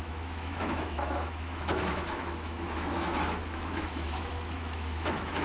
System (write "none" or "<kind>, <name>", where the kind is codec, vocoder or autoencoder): autoencoder, DAC-VAE